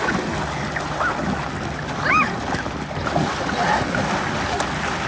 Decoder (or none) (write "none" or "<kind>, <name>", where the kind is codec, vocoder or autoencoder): none